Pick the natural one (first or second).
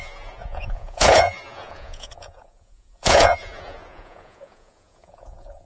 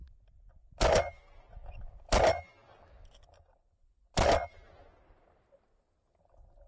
second